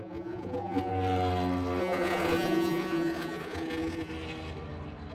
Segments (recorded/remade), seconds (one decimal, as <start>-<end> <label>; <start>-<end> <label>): 0.0-0.9 remade; 0.9-1.8 recorded; 1.8-4.1 remade; 4.1-5.1 recorded